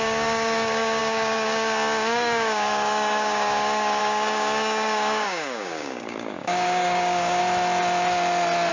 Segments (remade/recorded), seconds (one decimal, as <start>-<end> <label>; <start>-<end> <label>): 0.0-7.4 remade; 7.4-8.7 recorded